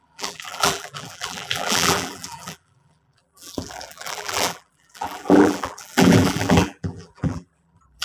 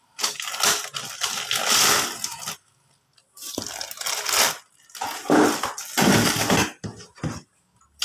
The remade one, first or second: first